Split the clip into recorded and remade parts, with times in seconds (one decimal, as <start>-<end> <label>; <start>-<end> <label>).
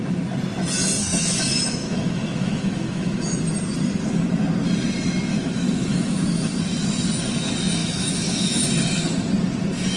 0.0-1.0 recorded; 1.0-3.4 remade; 3.4-5.3 recorded; 5.3-6.6 remade; 6.6-7.8 recorded; 7.8-8.7 remade; 8.7-10.0 recorded